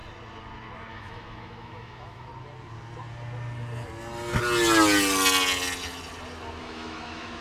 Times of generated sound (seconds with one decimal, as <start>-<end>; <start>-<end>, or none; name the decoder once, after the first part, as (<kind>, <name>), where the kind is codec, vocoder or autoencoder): 0.9-2.3 (autoencoder, DAC-VAE); 6.6-7.4

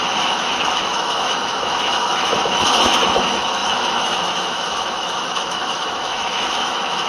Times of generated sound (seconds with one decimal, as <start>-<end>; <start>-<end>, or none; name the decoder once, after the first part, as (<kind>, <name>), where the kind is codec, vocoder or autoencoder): 0.0-7.1 (autoencoder, DAC-VAE)

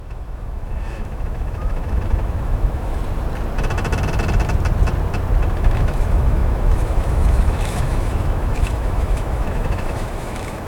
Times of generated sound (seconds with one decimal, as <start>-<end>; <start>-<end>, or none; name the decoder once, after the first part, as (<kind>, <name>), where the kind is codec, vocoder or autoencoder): 0.0-3.0 (autoencoder, DAC-VAE); 5.6-10.7

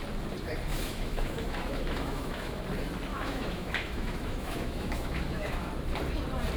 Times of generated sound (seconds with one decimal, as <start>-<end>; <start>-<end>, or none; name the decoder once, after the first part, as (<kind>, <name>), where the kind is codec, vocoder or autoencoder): 0.7-2.6 (autoencoder, DAC-VAE); 3.1-5.7

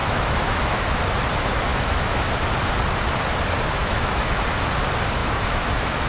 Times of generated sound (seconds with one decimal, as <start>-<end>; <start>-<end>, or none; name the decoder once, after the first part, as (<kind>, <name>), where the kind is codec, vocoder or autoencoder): 0.0-1.0 (autoencoder, DAC-VAE); 1.7-2.3; 3.8-4.4; 5.2-6.1

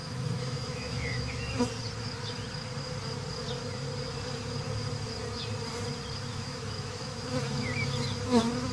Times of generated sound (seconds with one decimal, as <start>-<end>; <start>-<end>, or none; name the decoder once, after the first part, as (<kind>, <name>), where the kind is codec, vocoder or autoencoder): 0.0-1.6 (autoencoder, DAC-VAE); 6.3-7.7

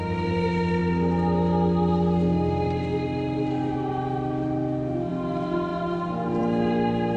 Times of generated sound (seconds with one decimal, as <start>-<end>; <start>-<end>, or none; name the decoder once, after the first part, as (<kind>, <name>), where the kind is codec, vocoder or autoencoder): none

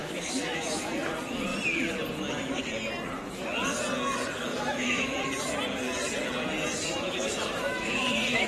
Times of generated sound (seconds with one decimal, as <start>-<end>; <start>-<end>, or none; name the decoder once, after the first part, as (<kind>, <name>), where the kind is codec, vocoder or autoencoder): 0.0-1.1 (autoencoder, DAC-VAE); 4.5-5.1; 6.9-8.5